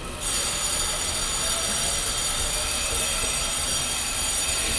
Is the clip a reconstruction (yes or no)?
no